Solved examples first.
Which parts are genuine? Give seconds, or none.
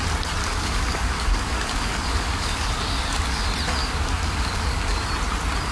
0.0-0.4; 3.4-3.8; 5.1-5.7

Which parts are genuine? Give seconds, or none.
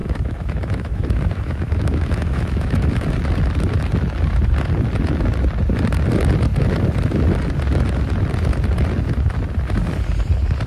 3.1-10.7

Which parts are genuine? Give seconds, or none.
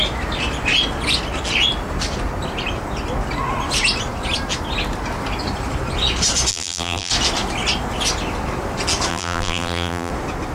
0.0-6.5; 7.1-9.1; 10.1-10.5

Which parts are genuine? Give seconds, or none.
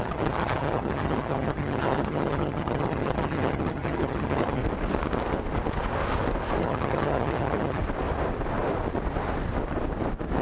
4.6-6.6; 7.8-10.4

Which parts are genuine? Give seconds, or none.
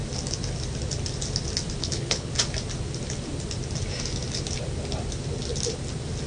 0.0-1.8; 2.3-6.3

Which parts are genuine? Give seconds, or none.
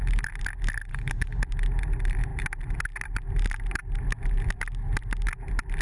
0.0-0.9; 1.4-5.8